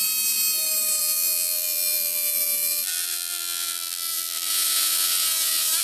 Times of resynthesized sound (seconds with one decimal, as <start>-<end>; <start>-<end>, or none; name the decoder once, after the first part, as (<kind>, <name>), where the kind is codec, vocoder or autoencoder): 1.0-4.5 (vocoder, BigVGAN v2)